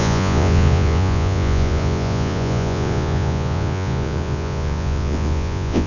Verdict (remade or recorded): remade